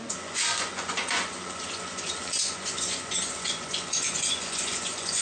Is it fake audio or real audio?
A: fake